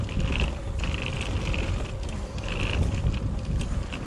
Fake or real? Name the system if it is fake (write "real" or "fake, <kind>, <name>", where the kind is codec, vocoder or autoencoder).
real